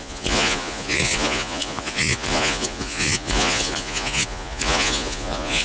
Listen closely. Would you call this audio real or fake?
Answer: fake